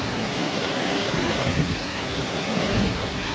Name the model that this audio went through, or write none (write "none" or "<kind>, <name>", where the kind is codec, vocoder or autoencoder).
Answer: codec, SNAC